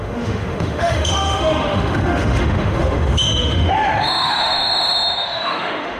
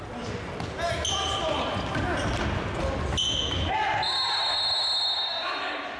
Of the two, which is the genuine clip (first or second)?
second